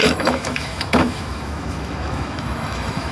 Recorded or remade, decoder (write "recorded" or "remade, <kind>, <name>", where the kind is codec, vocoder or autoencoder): remade, autoencoder, DAC-VAE